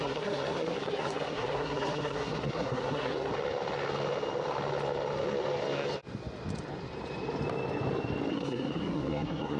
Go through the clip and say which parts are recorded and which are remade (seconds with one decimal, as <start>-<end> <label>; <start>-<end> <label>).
0.0-3.3 remade; 3.3-8.3 recorded; 8.3-9.6 remade

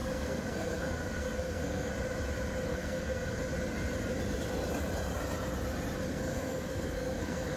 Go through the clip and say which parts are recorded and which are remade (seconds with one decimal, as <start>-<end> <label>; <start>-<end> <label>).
0.0-1.9 remade; 1.9-2.7 recorded; 2.7-3.4 remade; 3.4-6.1 recorded; 6.1-7.6 remade